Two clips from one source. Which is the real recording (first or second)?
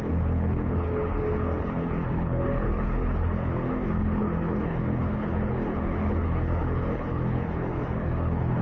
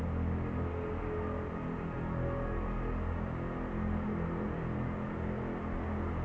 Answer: second